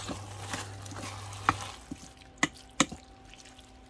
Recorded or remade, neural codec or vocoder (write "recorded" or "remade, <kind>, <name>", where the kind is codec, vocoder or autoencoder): recorded